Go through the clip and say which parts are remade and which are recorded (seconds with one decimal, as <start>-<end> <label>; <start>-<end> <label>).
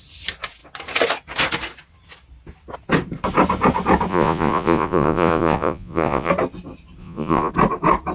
0.0-4.1 recorded; 4.1-6.3 remade; 6.3-7.0 recorded; 7.0-7.5 remade; 7.5-8.1 recorded